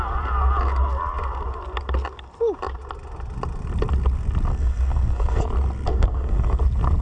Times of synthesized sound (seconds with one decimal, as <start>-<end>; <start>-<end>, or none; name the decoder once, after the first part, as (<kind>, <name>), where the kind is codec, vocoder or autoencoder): 4.5-5.4 (codec, SNAC); 5.9-6.6